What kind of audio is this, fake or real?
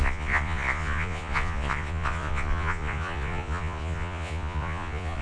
fake